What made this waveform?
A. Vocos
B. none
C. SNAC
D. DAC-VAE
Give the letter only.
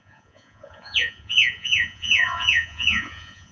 A